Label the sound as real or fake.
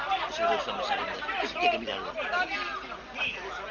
real